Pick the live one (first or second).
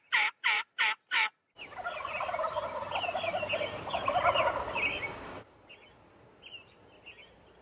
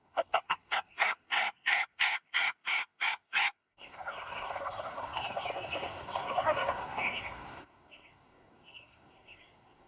first